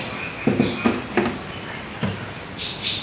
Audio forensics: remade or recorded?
recorded